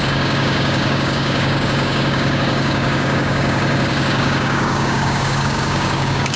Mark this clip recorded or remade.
remade